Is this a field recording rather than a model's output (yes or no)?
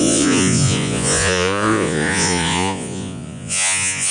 no